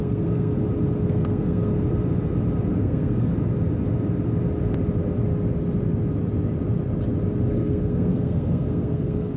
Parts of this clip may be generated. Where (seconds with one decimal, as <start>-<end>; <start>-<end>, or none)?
0.0-0.5; 1.1-1.7; 2.8-3.3; 7.5-9.4